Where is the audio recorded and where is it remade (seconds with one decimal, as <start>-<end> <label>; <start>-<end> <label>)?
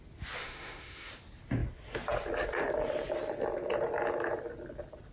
0.0-0.4 recorded; 0.4-1.1 remade; 1.1-5.1 recorded